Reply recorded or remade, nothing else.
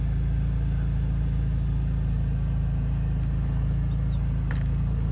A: recorded